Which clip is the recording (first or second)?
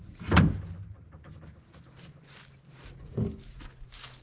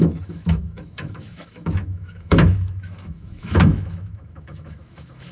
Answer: first